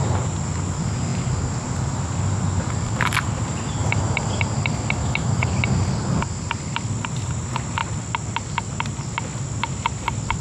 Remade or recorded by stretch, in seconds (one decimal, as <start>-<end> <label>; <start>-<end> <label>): 0.0-5.0 recorded; 5.0-5.5 remade; 5.5-10.4 recorded